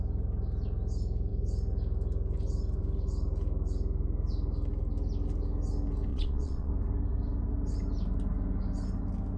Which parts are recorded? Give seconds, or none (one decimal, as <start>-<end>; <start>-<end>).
0.0-6.1; 6.7-9.4